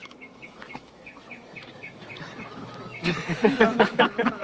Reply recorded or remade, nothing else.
remade